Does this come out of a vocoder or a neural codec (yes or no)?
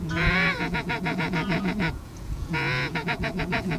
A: yes